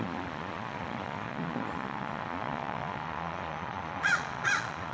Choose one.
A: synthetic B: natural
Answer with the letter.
A